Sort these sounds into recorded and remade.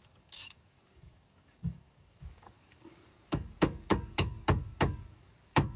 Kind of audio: remade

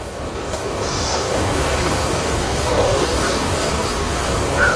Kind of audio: remade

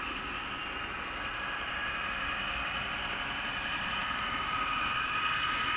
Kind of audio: recorded